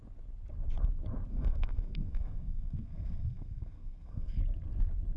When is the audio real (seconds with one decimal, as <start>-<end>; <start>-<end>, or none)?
0.0-1.3; 4.4-5.2